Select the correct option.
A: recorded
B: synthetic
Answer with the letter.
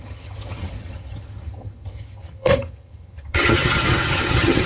B